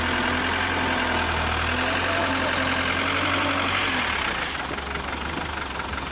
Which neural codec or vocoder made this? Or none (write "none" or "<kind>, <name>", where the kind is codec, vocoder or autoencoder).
none